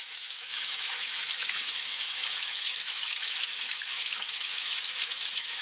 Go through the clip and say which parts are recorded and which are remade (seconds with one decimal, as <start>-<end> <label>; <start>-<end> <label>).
0.0-5.6 remade